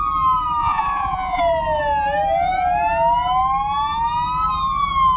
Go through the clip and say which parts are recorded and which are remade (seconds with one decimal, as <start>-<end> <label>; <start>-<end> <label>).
0.0-0.6 recorded; 0.6-1.4 remade; 1.4-5.2 recorded